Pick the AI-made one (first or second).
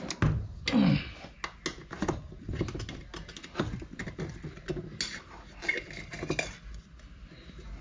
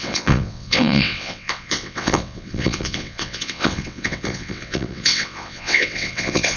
second